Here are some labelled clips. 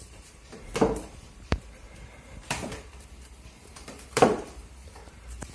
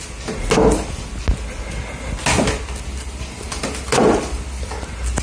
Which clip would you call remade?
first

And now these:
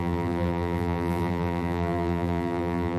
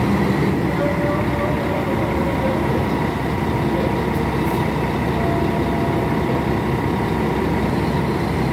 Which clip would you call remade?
first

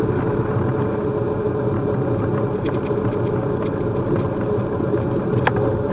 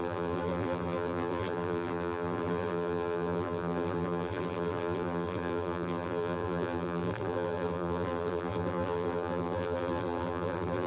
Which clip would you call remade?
second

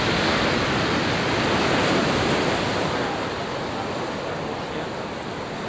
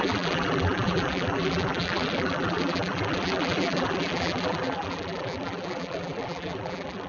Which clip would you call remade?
second